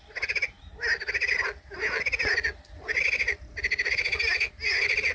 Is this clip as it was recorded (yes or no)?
yes